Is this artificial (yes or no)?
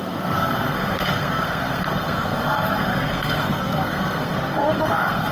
yes